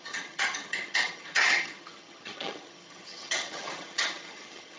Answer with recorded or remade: remade